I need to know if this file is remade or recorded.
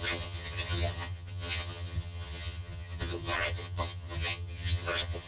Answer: remade